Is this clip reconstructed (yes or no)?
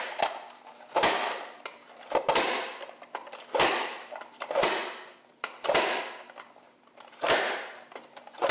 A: yes